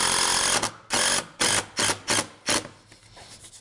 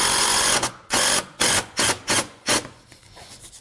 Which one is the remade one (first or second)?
second